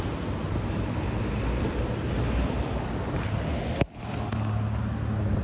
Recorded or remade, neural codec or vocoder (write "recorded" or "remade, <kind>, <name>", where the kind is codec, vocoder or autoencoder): recorded